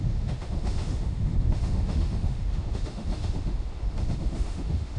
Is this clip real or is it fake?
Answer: fake